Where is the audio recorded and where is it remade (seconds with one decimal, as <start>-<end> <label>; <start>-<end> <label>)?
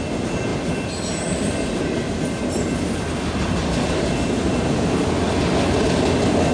0.0-6.5 recorded